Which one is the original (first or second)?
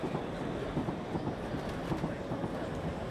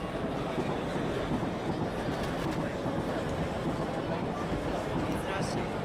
second